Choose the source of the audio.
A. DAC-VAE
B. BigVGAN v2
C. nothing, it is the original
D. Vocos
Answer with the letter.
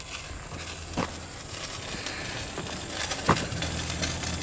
C